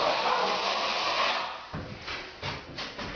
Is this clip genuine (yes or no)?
yes